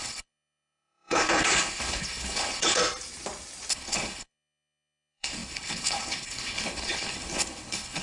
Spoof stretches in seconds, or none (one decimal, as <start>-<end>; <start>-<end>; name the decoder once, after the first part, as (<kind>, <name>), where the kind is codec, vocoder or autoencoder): 0.0-2.8 (codec, HILCodec); 3.7-8.0